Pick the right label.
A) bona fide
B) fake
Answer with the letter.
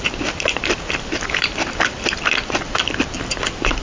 A